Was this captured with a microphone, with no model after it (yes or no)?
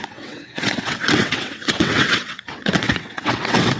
no